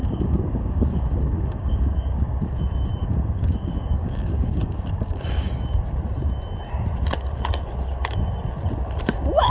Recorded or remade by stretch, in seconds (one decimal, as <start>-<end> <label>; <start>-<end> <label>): 0.0-2.5 remade; 2.5-3.0 recorded; 3.0-5.5 remade; 5.5-9.5 recorded